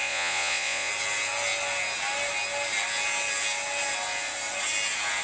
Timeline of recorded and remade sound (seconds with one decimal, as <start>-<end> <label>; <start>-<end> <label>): 0.0-0.9 remade; 0.9-5.2 recorded

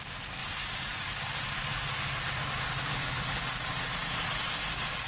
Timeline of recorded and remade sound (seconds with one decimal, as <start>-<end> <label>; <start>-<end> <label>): 0.0-2.9 recorded; 2.9-3.4 remade; 3.4-5.1 recorded

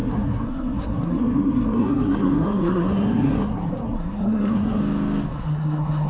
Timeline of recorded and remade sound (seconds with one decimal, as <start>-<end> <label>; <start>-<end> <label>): 0.0-4.8 remade; 4.8-5.3 recorded; 5.3-6.1 remade

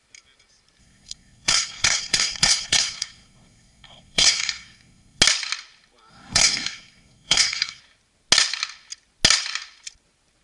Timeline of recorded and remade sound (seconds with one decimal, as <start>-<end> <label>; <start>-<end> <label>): 0.0-0.8 recorded; 0.8-5.2 remade; 5.2-6.1 recorded; 6.1-7.8 remade; 7.8-10.4 recorded

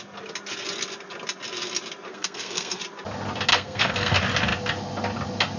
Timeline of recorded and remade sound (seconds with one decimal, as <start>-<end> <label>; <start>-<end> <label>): 0.0-2.1 recorded; 2.1-2.8 remade; 2.8-3.5 recorded; 3.5-4.1 remade; 4.1-5.6 recorded